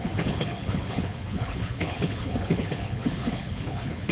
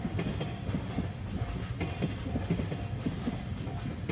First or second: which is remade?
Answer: first